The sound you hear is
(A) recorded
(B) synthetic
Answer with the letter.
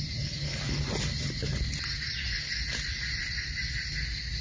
A